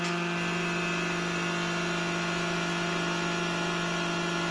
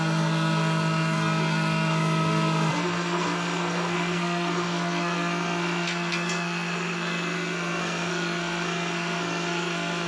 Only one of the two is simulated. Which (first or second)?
second